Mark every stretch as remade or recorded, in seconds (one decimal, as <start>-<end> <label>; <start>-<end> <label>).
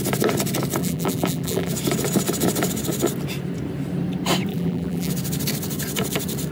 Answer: 0.0-0.8 recorded; 0.8-1.7 remade; 1.7-4.5 recorded; 4.5-5.1 remade; 5.1-6.5 recorded